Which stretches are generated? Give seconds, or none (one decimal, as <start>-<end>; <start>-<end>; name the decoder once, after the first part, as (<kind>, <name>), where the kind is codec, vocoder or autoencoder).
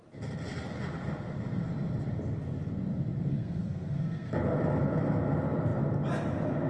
3.3-4.3 (codec, SNAC)